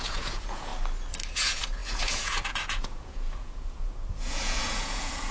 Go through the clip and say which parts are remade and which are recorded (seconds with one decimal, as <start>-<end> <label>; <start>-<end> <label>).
0.0-0.7 remade; 0.7-1.3 recorded; 1.3-5.3 remade